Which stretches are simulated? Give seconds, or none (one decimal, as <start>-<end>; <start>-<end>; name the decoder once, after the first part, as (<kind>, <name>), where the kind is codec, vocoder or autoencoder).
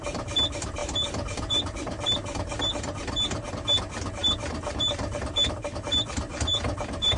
0.8-3.5 (vocoder, BigVGAN v2); 4.2-7.2